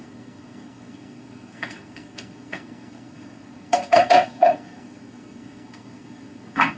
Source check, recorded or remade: remade